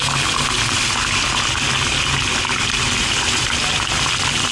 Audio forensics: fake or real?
fake